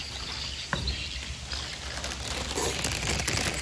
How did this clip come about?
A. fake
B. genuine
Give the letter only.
B